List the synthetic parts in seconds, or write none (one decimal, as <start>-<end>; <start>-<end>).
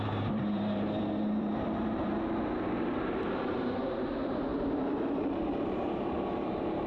0.0-2.1; 2.8-6.9